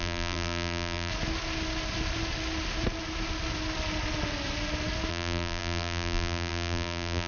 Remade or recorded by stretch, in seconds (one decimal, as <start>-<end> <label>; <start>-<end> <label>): 0.0-1.1 remade; 1.1-5.1 recorded; 5.1-7.3 remade